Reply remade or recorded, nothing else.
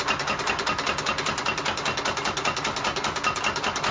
recorded